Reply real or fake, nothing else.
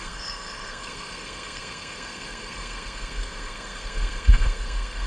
fake